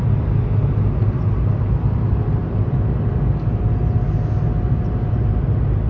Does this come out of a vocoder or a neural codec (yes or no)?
no